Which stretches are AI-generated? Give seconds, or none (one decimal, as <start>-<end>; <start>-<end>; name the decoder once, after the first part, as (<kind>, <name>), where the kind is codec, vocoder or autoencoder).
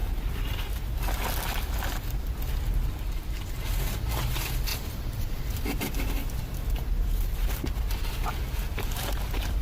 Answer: 4.7-7.7 (vocoder, BigVGAN v2); 8.7-9.6